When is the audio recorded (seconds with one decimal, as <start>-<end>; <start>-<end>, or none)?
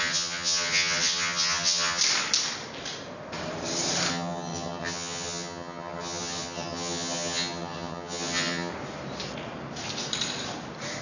2.0-4.1; 8.7-11.0